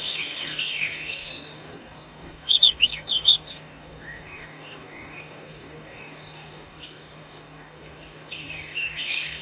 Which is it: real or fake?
fake